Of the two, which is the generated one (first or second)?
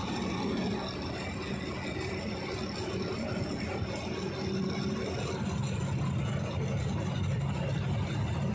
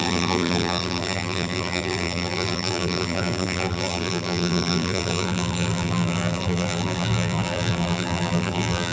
second